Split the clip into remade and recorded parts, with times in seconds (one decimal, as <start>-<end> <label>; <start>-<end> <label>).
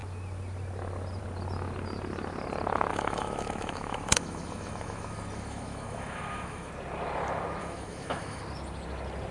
0.0-2.9 recorded; 2.9-6.7 remade; 6.7-7.6 recorded; 7.6-8.4 remade; 8.4-9.3 recorded